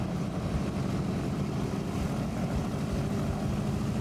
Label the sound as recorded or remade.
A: recorded